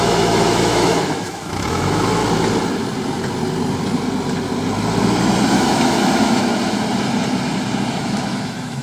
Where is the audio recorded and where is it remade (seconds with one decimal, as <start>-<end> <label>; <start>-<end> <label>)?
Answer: 0.0-2.2 remade; 2.2-5.5 recorded; 5.5-6.5 remade; 6.5-7.9 recorded; 7.9-8.8 remade